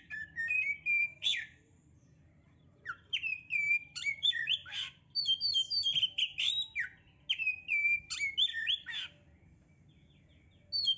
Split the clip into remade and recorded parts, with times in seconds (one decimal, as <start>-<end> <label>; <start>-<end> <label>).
0.0-1.1 recorded; 1.1-6.2 remade; 6.2-11.0 recorded